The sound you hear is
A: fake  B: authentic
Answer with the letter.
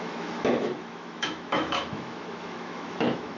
A